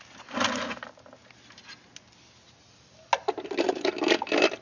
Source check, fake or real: real